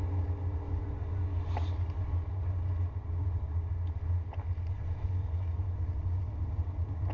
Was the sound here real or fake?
real